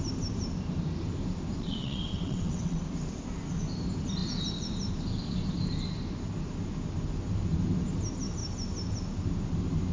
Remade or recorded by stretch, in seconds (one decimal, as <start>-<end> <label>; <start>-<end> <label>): 0.0-1.6 recorded; 1.6-2.8 remade; 2.8-9.9 recorded